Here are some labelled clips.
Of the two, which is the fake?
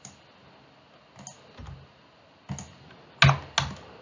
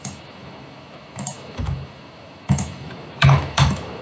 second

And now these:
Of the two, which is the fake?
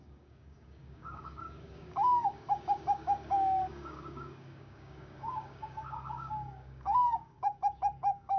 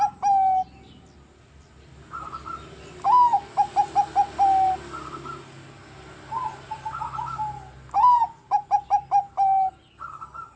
first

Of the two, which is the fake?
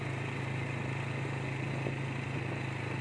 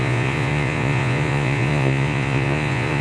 second